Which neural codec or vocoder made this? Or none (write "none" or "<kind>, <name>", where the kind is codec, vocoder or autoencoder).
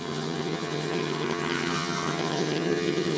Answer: vocoder, HiFi-GAN